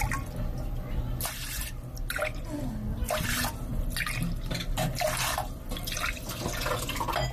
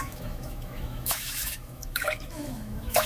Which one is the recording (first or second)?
first